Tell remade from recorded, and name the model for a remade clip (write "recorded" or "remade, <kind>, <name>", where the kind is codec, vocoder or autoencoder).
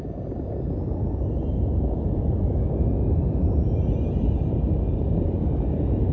recorded